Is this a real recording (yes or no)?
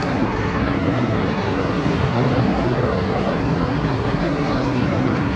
no